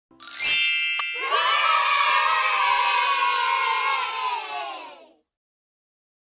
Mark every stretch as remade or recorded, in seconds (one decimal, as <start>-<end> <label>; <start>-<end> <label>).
0.0-6.3 recorded